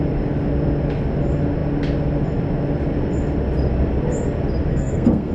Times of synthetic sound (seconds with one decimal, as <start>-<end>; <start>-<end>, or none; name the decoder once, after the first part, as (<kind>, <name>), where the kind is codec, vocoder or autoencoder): 4.7-5.3 (codec, SNAC)